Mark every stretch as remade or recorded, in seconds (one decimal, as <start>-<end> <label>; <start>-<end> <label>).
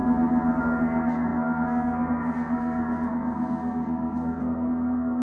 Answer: 0.0-0.6 recorded; 0.6-5.2 remade